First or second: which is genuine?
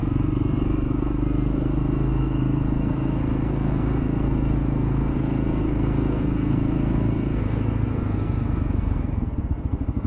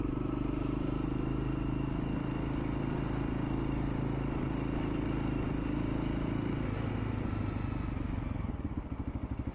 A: second